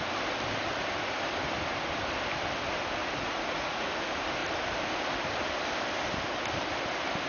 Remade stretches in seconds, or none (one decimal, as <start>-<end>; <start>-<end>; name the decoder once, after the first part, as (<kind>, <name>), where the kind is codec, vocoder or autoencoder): 3.0-3.9 (vocoder, Vocos)